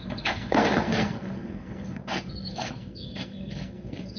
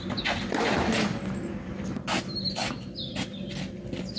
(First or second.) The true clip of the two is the second